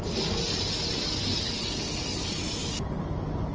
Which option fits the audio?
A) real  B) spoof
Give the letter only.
A